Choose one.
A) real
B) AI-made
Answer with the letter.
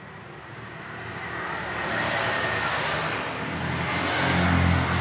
A